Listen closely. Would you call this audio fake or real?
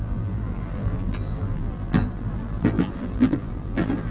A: fake